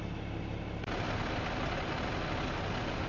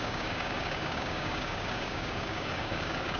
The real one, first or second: first